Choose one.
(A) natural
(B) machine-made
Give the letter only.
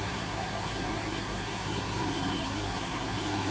B